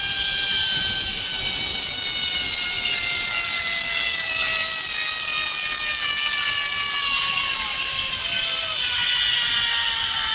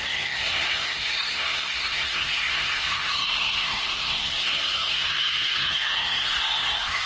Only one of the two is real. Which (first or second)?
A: first